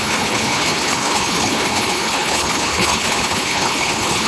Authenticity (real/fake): fake